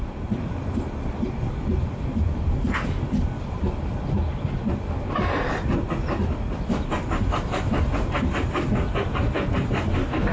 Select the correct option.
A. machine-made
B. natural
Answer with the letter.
B